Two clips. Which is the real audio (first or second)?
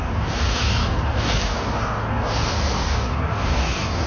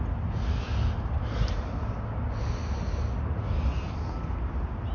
second